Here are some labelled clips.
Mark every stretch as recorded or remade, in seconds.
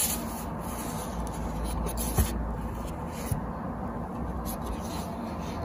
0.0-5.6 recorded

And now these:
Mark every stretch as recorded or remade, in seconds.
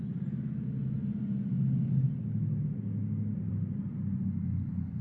0.0-5.0 recorded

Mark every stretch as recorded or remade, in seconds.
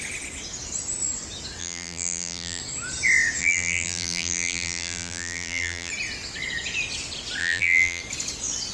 0.0-1.6 recorded; 1.6-2.6 remade; 2.6-3.4 recorded; 3.4-5.9 remade; 5.9-7.4 recorded; 7.4-8.0 remade; 8.0-8.7 recorded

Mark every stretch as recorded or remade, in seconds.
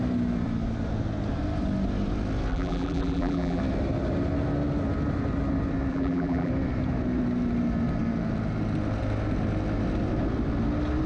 0.0-2.5 recorded; 2.5-3.6 remade; 3.6-5.9 recorded; 5.9-6.5 remade; 6.5-11.1 recorded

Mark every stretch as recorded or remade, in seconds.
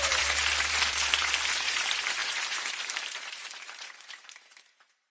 0.0-5.1 remade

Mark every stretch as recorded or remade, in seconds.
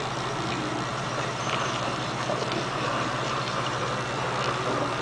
0.0-0.9 recorded; 0.9-3.9 remade; 3.9-5.0 recorded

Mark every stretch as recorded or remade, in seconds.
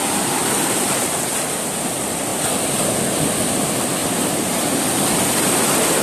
0.0-4.0 recorded; 4.0-5.2 remade; 5.2-6.0 recorded